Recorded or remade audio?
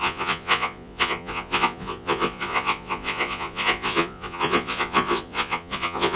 remade